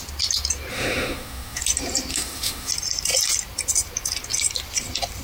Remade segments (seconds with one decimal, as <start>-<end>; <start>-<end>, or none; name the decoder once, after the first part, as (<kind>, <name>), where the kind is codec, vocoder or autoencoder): 0.7-1.6 (autoencoder, DAC-VAE); 2.1-2.7